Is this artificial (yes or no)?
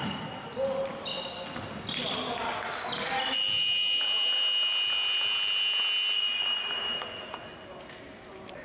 no